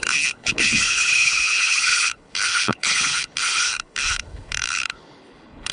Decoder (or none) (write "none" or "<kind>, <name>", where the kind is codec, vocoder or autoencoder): codec, HILCodec